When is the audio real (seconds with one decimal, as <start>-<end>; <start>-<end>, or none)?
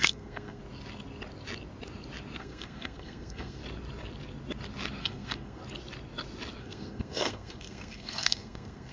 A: 0.6-2.4; 3.6-5.0; 5.6-6.6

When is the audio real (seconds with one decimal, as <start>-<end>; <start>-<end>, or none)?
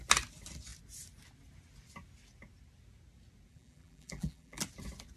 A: 0.0-3.5; 4.6-5.2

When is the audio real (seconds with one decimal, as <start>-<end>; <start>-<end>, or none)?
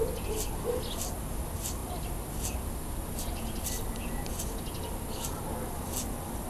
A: 0.0-6.5